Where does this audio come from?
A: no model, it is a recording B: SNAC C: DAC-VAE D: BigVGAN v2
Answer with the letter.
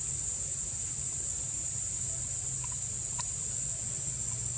A